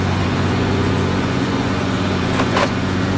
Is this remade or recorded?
remade